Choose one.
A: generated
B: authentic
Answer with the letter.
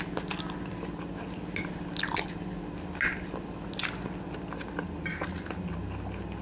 B